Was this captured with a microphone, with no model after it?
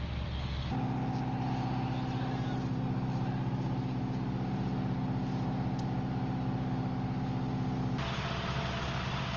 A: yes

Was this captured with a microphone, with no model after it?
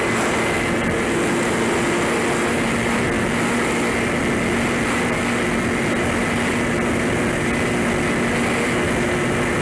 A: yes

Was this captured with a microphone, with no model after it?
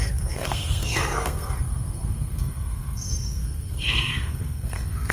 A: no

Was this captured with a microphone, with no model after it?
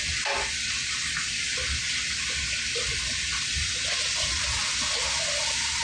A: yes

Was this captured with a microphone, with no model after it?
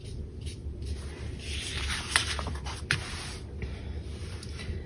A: yes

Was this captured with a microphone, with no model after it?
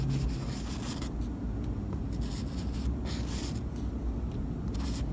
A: yes